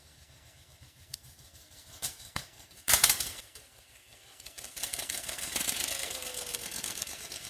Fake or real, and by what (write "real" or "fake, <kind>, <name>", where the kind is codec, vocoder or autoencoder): fake, codec, SNAC